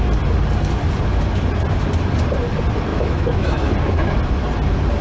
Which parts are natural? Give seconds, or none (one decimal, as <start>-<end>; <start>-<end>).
0.0-2.9; 3.7-5.0